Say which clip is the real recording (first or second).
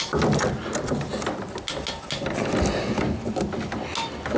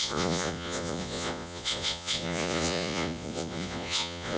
first